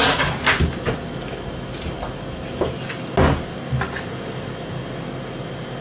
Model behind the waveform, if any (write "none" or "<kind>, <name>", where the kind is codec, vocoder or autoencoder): none